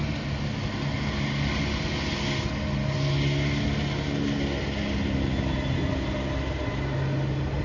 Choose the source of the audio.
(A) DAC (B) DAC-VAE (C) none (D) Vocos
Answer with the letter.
C